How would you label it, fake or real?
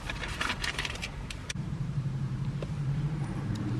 fake